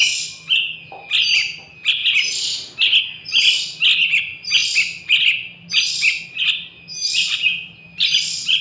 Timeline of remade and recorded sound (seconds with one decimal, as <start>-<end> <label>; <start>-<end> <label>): 0.0-6.9 recorded; 6.9-8.0 remade; 8.0-8.6 recorded

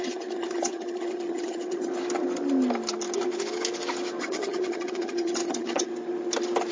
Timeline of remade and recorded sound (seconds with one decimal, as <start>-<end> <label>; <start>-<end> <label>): 0.0-1.9 remade; 1.9-4.2 recorded; 4.2-5.9 remade; 5.9-6.7 recorded

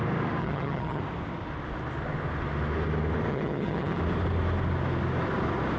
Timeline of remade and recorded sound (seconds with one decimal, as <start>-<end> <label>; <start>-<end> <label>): 0.0-0.4 recorded; 0.4-1.0 remade; 1.0-3.3 recorded; 3.3-4.0 remade; 4.0-5.8 recorded

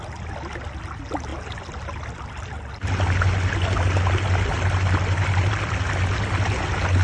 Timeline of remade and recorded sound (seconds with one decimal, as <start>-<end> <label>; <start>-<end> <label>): 0.0-7.0 recorded

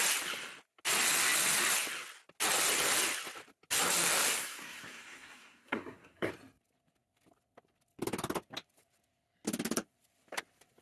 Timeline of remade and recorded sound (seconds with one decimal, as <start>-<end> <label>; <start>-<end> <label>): 0.0-4.4 recorded; 4.4-6.3 remade; 6.3-10.8 recorded

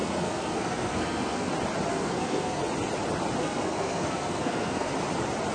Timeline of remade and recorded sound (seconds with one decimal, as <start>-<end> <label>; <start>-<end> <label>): 0.0-1.5 remade; 1.5-1.9 recorded; 1.9-2.6 remade; 2.6-3.4 recorded; 3.4-4.9 remade; 4.9-5.5 recorded